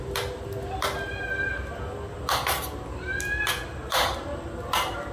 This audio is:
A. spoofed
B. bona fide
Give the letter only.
B